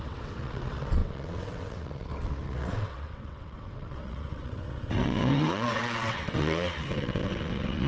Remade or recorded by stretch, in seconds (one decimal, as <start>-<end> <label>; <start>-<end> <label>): 0.0-7.9 remade